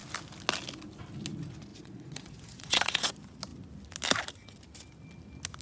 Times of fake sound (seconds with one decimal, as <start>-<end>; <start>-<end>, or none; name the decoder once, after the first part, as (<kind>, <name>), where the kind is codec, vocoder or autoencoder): 1.7-3.1 (vocoder, Vocos)